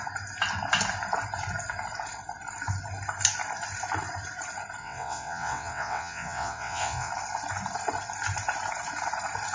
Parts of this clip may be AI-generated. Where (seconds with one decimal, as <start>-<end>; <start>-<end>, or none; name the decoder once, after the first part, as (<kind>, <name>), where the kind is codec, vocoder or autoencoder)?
4.8-7.1 (vocoder, WaveNeXt)